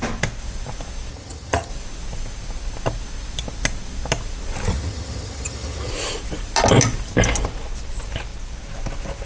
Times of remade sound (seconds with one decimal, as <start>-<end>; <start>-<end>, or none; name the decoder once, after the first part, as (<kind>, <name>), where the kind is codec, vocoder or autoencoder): 1.1-1.7 (vocoder, HiFi-GAN); 4.7-5.9